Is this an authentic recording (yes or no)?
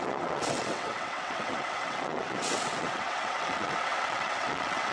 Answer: no